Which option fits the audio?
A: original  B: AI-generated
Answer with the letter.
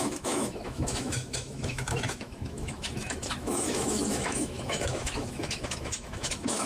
B